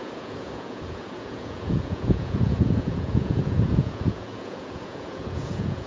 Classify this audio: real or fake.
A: fake